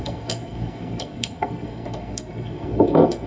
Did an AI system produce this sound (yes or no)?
yes